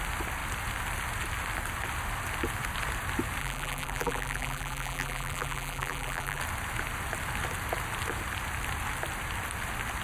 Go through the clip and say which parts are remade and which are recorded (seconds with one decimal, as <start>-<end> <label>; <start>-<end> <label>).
0.0-3.4 recorded; 3.4-6.4 remade; 6.4-10.0 recorded